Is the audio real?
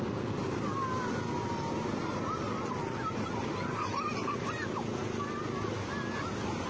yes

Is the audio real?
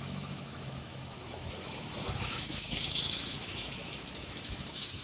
no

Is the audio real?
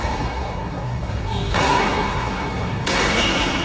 no